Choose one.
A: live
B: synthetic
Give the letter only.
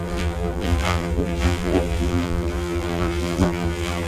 B